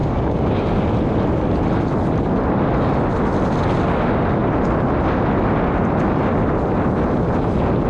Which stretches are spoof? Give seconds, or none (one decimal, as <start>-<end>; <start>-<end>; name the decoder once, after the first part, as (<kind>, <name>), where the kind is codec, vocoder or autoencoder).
0.0-0.5 (codec, DAC)